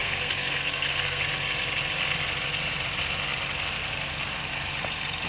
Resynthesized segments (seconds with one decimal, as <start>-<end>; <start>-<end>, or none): 0.0-1.2

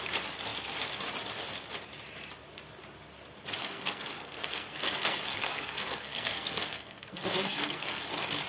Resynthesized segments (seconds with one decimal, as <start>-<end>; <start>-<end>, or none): 3.6-8.1

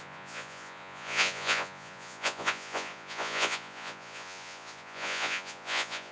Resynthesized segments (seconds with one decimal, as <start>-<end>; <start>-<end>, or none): 0.0-6.1

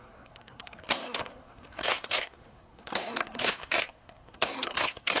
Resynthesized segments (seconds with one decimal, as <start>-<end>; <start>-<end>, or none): 0.0-5.2